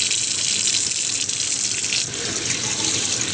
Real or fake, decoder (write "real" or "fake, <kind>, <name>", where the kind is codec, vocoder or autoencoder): real